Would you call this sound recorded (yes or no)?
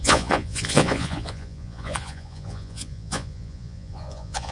no